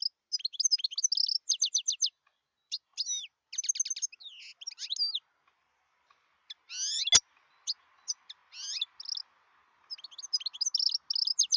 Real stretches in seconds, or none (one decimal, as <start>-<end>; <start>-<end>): 0.0-11.6